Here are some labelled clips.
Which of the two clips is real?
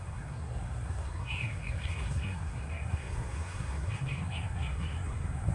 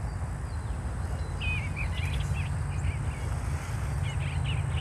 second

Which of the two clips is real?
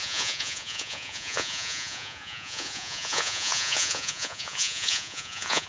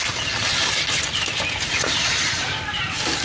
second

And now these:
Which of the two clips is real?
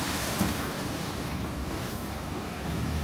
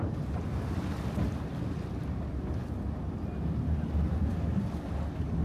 second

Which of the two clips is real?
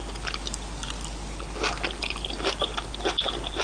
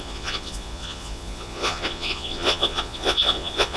first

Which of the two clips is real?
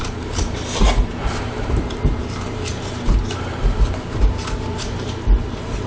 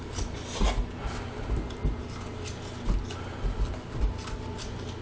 second